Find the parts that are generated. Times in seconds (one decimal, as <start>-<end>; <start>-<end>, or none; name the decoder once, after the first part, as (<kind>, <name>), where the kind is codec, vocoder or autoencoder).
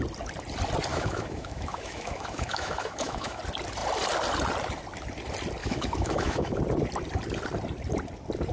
0.9-3.4 (autoencoder, DAC-VAE); 5.6-6.6